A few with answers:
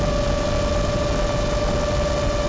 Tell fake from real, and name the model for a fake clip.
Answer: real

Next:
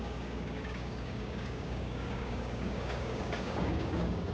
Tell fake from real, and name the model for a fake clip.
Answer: fake, codec, DAC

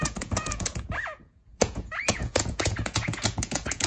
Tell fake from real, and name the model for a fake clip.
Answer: fake, vocoder, Vocos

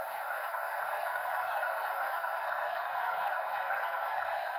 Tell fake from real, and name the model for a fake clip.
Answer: fake, codec, SNAC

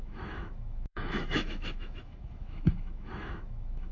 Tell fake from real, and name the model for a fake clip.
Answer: fake, autoencoder, DAC-VAE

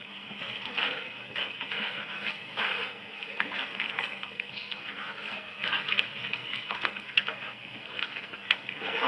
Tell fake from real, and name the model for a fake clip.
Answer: fake, codec, SNAC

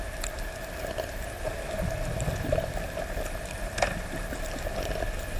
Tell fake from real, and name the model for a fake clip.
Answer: fake, vocoder, BigVGAN v2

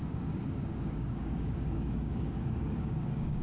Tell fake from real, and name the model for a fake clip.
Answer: fake, codec, DAC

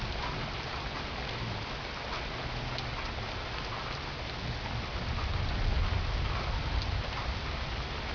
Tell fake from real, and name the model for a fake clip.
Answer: real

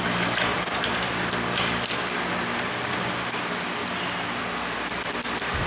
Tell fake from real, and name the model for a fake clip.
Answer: real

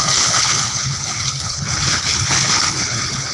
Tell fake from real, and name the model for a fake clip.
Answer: fake, codec, HILCodec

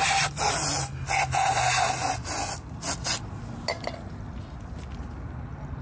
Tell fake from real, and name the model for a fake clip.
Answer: real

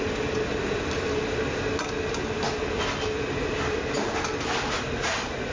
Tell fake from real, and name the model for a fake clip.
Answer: real